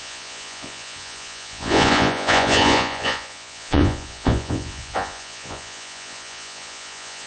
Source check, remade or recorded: remade